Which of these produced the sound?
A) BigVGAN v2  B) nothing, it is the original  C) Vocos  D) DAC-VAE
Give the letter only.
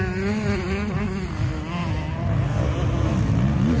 B